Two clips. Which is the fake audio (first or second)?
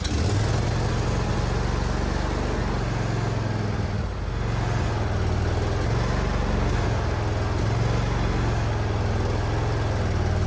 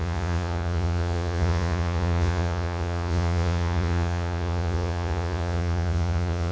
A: second